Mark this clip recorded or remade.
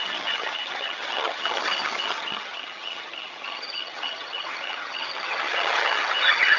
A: remade